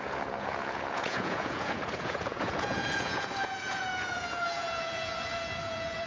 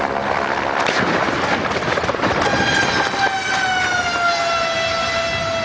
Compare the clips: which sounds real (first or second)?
second